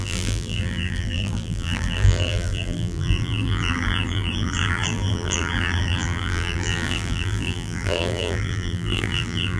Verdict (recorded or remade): remade